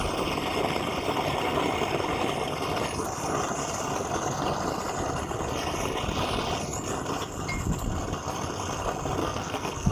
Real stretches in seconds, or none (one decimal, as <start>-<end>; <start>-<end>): 0.0-9.2